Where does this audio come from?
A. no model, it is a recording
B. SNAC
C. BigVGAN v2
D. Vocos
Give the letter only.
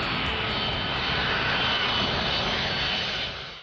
A